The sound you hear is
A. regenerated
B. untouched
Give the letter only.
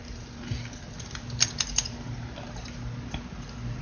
B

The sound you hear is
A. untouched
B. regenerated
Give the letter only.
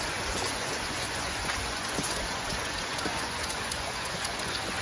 B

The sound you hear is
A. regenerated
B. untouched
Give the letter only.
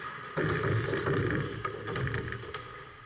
B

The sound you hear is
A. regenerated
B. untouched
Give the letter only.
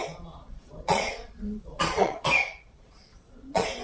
A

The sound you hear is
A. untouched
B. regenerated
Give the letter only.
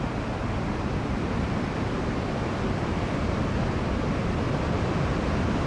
A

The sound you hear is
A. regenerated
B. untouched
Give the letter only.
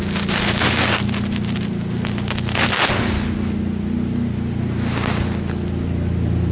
B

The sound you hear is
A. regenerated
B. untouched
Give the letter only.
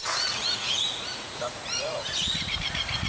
A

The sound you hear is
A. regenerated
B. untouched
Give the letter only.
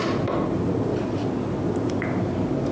B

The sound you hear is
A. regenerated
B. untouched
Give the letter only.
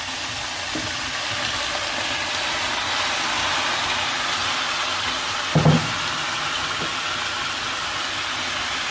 B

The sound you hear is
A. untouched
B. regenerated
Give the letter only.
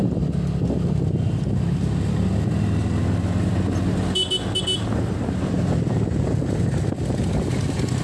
A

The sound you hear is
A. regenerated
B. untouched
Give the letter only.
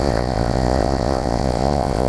A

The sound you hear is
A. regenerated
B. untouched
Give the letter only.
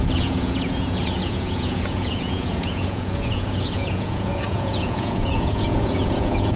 A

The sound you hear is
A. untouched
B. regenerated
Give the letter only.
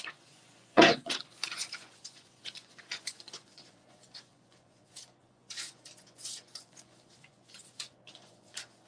B